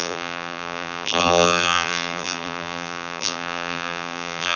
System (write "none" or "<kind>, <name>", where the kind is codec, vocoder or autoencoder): vocoder, BigVGAN v2